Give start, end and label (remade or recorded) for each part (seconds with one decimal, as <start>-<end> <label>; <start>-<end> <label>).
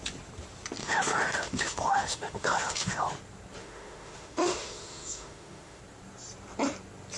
0.0-0.8 recorded; 0.8-3.0 remade; 3.0-3.6 recorded; 3.6-5.8 remade; 5.8-7.2 recorded